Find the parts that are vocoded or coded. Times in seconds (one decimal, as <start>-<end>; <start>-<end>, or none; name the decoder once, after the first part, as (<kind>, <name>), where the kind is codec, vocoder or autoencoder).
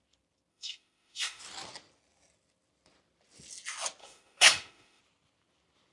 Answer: 0.5-1.4 (autoencoder, DAC-VAE); 4.0-5.0